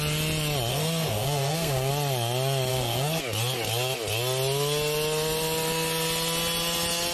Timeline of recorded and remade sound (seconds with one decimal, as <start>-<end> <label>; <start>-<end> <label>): 0.0-0.7 recorded; 0.7-1.9 remade; 1.9-2.7 recorded; 2.7-3.2 remade; 3.2-7.1 recorded